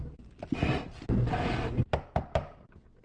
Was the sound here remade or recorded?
recorded